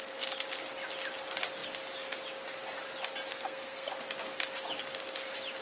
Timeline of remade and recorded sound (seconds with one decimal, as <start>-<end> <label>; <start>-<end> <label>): 0.0-3.3 recorded; 3.3-3.9 remade; 3.9-5.6 recorded

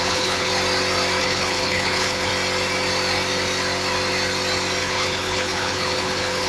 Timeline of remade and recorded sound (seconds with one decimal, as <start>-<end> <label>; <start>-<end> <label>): 0.0-0.5 remade; 0.5-1.2 recorded; 1.2-2.3 remade; 2.3-4.8 recorded; 4.8-6.5 remade

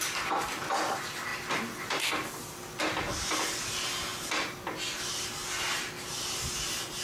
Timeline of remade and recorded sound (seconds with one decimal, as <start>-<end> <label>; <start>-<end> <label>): 0.0-7.0 recorded